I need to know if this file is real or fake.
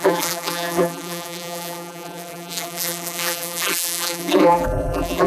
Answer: fake